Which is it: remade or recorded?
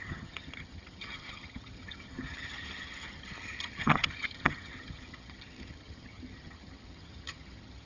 remade